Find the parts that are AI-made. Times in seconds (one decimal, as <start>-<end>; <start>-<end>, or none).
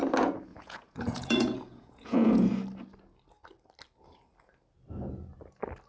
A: 0.5-2.5